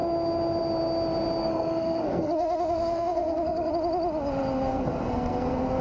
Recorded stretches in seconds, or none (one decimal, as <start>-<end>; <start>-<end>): 0.0-1.4; 3.7-4.7